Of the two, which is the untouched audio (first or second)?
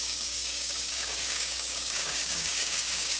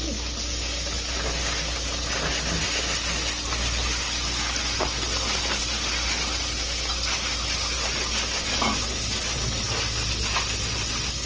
second